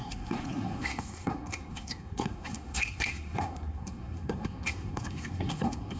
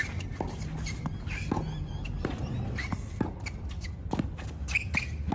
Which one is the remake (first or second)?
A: first